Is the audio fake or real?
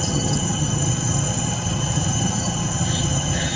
fake